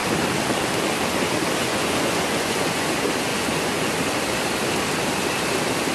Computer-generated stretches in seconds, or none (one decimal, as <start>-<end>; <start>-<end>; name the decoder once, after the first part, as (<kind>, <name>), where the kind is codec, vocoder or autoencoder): 1.6-2.9 (vocoder, Vocos); 3.3-3.9